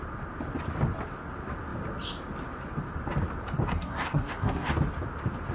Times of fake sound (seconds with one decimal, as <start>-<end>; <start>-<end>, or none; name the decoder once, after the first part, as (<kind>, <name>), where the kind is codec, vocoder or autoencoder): 3.7-4.7 (codec, SNAC)